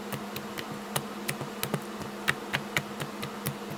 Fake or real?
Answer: real